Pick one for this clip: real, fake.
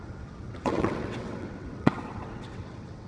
fake